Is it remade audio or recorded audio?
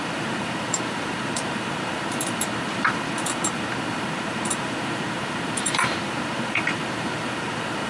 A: remade